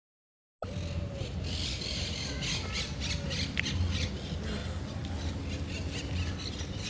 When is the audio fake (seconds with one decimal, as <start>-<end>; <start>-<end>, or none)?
4.6-5.4

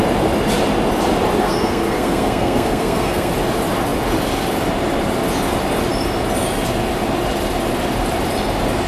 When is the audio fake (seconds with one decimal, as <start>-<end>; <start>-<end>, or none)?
1.4-3.3

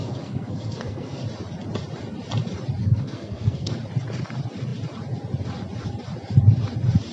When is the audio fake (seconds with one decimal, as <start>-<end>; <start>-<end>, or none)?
0.0-1.2; 2.8-3.7

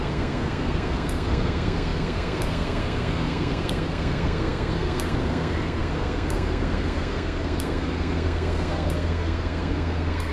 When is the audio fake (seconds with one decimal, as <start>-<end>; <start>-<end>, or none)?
0.0-10.3